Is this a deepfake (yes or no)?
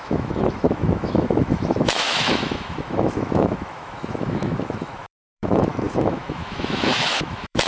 yes